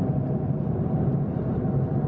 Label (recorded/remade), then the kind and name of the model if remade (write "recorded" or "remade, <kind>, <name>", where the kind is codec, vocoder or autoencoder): recorded